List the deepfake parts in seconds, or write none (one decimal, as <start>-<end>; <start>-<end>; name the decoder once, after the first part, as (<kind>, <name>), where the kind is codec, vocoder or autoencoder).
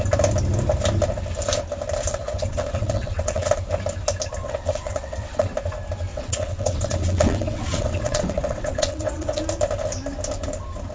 2.1-3.6 (vocoder, WaveNeXt); 4.4-5.5; 6.1-9.4